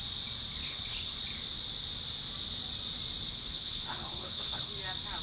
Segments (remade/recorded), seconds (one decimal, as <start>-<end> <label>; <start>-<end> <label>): 0.0-0.6 recorded; 0.6-1.1 remade; 1.1-3.3 recorded; 3.3-4.7 remade; 4.7-5.2 recorded